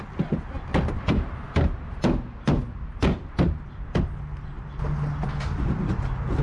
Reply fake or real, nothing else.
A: real